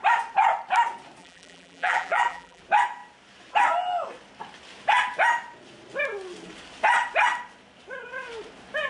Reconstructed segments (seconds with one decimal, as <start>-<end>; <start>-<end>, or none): 1.2-2.6